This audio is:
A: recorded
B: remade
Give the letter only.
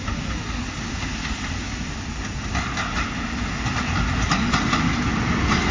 A